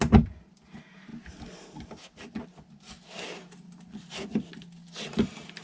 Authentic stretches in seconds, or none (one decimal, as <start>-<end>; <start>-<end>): 0.0-5.6